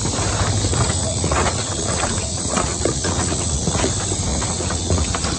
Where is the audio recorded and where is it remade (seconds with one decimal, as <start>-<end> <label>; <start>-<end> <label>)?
0.0-0.7 recorded; 0.7-3.9 remade; 3.9-4.3 recorded; 4.3-5.4 remade